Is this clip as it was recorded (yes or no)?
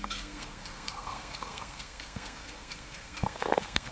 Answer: no